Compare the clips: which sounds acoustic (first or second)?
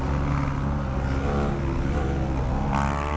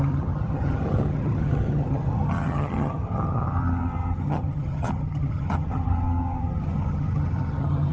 first